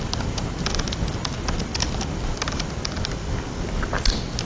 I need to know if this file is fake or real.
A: real